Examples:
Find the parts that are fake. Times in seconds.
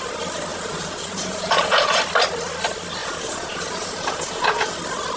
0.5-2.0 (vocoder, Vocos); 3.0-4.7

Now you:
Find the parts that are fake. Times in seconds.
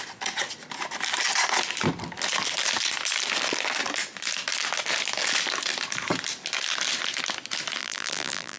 7.8-8.6 (vocoder, BigVGAN v2)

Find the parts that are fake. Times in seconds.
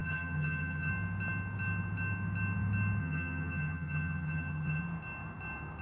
0.0-0.9 (vocoder, HiFi-GAN); 3.0-4.8